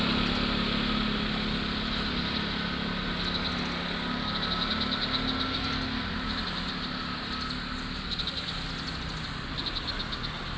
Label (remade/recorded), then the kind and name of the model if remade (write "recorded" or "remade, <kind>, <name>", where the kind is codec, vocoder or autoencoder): recorded